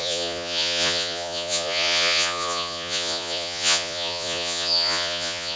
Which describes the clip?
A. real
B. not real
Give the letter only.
B